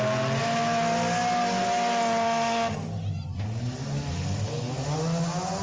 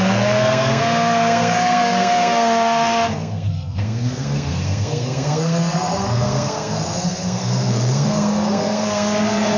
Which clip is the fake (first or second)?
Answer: second